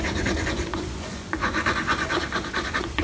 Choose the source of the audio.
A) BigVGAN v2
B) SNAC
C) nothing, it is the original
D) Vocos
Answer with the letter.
D